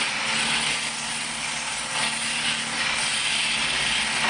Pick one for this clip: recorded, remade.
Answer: recorded